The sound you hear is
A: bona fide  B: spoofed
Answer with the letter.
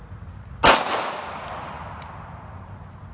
A